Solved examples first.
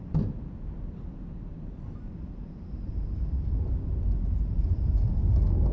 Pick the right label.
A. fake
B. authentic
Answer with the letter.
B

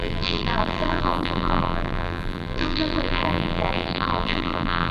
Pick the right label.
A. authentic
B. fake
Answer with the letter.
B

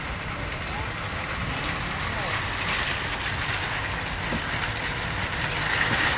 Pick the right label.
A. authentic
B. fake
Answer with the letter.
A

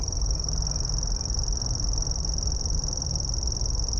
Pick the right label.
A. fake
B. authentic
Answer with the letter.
B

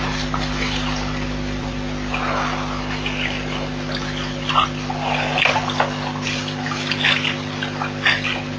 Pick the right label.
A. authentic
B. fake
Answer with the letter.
A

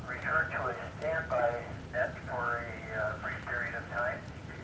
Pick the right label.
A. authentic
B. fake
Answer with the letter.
A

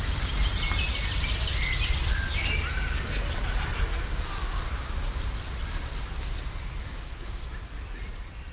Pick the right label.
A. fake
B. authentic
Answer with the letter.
B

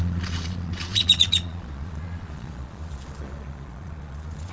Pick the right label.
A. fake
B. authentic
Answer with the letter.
A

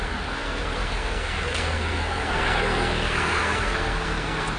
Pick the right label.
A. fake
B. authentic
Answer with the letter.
A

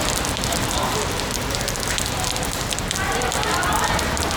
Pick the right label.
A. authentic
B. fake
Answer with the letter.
A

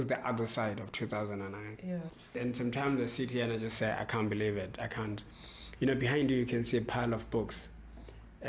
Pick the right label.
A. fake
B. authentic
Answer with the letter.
B